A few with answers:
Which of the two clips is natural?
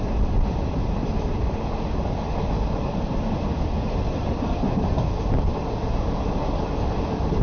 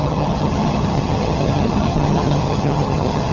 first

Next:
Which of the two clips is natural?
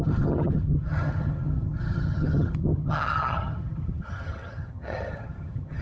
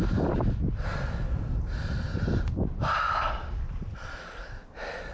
second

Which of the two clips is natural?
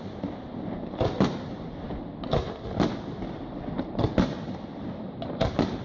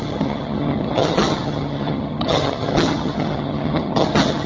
first